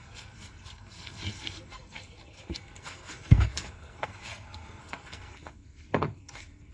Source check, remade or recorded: remade